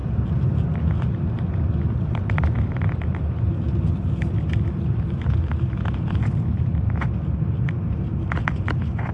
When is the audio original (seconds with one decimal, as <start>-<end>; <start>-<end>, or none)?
0.0-9.1